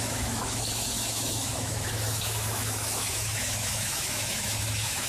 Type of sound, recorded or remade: remade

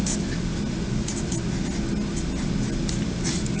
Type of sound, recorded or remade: recorded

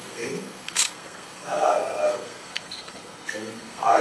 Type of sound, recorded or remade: remade